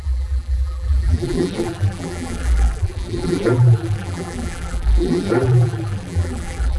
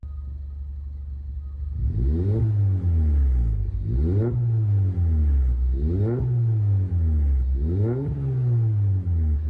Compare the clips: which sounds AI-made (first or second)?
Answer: first